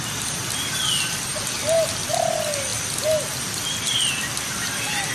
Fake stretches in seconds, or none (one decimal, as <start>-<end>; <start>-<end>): none